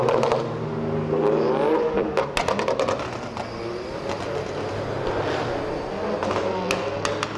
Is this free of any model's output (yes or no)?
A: yes